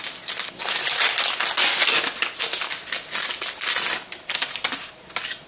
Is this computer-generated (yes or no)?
no